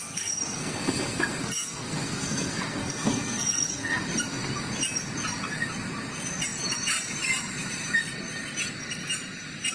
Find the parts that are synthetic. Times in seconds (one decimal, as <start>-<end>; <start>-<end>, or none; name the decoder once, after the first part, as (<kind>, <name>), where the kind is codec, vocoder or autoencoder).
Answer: 0.0-4.0 (codec, SNAC)